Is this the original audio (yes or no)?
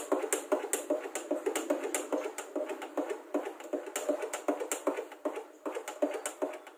yes